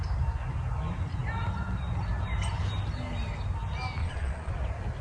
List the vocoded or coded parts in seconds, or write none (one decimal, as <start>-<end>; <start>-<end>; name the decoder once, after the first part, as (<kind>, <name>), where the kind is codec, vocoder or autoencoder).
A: 4.0-4.5 (vocoder, Vocos)

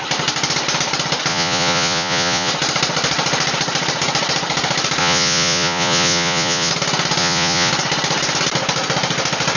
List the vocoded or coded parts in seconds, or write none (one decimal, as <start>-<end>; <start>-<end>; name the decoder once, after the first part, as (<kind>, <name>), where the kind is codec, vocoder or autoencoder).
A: 1.3-2.5 (vocoder, Vocos); 5.0-6.7; 7.2-7.7

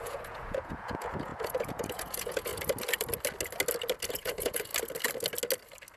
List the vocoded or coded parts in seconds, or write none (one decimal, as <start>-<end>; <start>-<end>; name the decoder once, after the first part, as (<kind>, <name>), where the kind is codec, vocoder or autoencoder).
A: 0.0-2.5 (vocoder, Vocos); 4.1-4.7

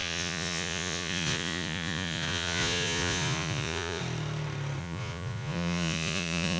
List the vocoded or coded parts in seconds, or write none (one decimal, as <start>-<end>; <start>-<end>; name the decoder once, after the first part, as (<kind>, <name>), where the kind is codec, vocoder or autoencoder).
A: 0.0-4.0 (vocoder, Vocos); 4.8-6.6

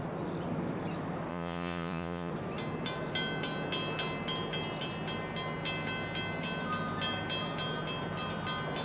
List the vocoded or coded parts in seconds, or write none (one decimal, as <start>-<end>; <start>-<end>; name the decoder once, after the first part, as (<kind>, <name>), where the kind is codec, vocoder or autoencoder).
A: 1.3-2.3 (vocoder, Vocos)

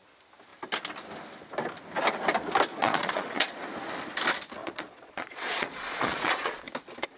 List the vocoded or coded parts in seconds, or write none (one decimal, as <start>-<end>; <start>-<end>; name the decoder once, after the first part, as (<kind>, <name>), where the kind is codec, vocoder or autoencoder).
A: 2.7-3.6 (vocoder, Vocos); 4.6-6.6